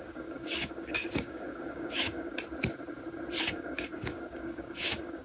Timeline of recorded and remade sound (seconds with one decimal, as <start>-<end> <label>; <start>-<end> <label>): 0.0-2.3 remade; 2.3-3.4 recorded; 3.4-5.2 remade